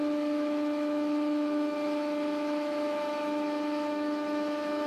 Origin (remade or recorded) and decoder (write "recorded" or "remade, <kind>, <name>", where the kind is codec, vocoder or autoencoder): remade, autoencoder, DAC-VAE